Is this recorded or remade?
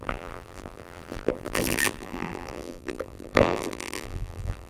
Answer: remade